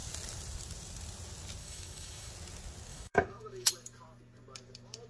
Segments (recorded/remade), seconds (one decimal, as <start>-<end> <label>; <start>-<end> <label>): 0.0-1.6 recorded; 1.6-2.3 remade; 2.3-2.9 recorded; 2.9-3.7 remade; 3.7-5.1 recorded